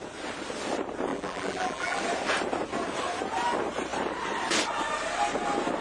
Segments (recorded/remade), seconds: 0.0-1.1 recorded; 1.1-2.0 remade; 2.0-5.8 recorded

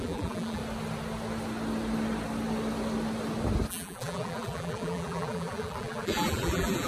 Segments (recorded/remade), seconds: 0.0-0.6 remade; 0.6-3.7 recorded; 3.7-6.9 remade